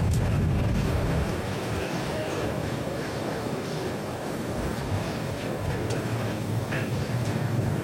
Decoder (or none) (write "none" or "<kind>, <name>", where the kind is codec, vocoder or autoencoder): codec, DAC